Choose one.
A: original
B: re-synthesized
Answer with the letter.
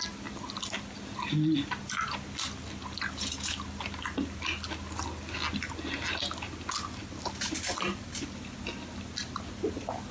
A